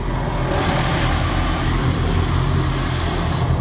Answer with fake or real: real